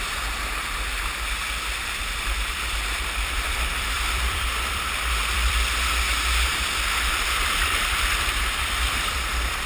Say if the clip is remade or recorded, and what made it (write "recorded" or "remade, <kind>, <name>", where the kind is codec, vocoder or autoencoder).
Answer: remade, vocoder, BigVGAN v2